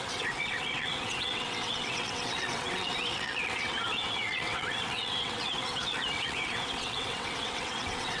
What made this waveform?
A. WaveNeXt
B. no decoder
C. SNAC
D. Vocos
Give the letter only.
A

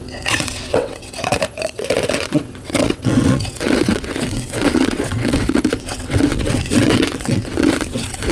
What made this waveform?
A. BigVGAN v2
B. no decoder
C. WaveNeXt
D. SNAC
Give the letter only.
C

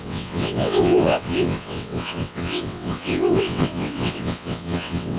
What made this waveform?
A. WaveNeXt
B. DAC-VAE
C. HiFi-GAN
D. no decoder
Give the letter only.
A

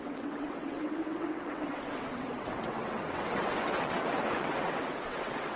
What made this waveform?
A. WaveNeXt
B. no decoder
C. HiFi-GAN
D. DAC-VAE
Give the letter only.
A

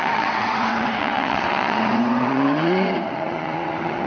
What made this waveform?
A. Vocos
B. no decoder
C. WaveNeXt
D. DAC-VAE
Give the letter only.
C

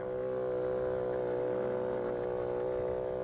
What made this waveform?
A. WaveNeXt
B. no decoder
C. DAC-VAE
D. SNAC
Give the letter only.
B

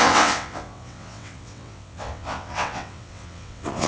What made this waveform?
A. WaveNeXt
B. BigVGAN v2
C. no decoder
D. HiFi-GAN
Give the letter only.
A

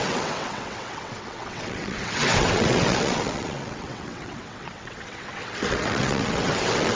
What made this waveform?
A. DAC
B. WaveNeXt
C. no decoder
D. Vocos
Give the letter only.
B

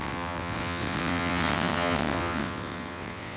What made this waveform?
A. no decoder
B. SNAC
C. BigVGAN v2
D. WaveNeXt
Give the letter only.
D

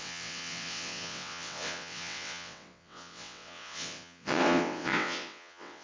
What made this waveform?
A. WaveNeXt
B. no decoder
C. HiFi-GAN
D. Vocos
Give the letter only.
A